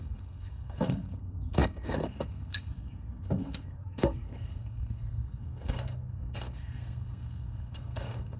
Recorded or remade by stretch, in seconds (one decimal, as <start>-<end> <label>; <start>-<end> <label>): 0.0-8.4 remade